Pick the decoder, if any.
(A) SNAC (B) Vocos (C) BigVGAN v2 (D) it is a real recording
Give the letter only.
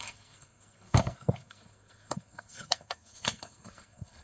A